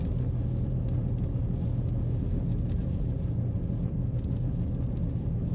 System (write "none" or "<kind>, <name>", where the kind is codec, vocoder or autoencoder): none